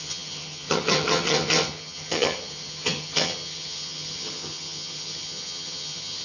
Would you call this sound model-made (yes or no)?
yes